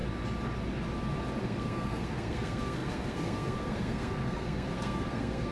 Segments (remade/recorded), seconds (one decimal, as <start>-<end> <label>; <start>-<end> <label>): 0.0-1.4 recorded; 1.4-5.5 remade